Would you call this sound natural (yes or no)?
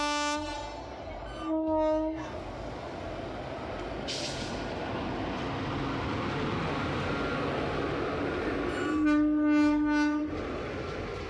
yes